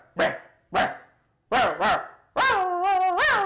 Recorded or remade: recorded